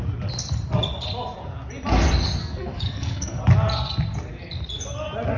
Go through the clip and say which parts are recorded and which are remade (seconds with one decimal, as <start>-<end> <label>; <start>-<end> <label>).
0.0-2.4 recorded; 2.4-3.4 remade; 3.4-5.4 recorded